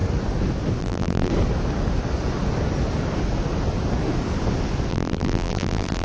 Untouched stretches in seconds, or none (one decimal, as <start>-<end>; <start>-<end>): 0.0-0.8; 1.3-4.9